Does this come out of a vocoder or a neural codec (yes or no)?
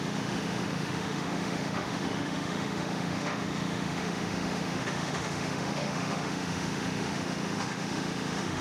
yes